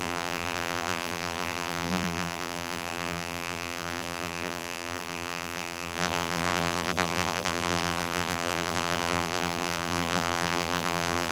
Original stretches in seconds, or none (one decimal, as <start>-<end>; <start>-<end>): none